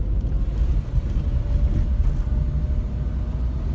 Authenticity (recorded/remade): recorded